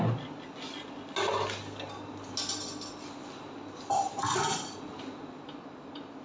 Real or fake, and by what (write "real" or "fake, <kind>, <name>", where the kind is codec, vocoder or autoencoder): real